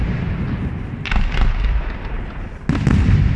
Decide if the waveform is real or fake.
real